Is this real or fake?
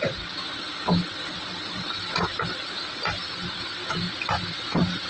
real